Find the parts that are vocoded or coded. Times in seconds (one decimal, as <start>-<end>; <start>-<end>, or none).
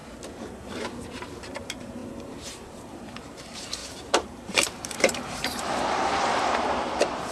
0.5-7.3